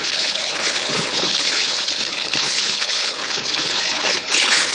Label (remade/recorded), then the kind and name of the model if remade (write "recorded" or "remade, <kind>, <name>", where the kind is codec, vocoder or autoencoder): remade, codec, HILCodec